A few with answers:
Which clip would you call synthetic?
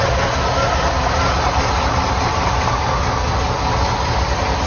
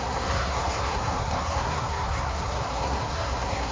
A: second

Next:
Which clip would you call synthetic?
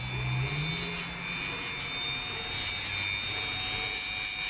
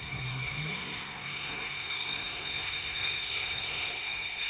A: second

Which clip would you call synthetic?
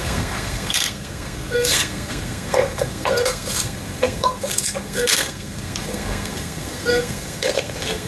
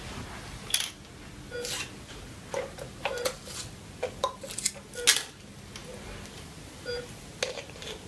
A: first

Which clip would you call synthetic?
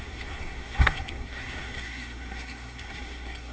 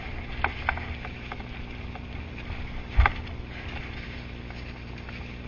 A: first